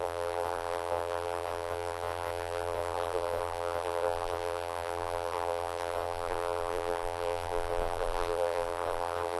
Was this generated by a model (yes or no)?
yes